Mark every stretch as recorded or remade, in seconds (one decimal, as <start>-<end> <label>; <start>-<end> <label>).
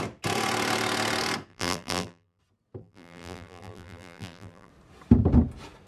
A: 0.0-1.5 recorded; 1.5-2.4 remade; 2.4-2.8 recorded; 2.8-4.7 remade; 4.7-5.9 recorded